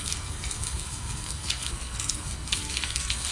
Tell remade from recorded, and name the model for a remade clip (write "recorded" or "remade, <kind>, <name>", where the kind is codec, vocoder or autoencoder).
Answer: remade, codec, SNAC